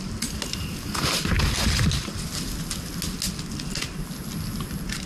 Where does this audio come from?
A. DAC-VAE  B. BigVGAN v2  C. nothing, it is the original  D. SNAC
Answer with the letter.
C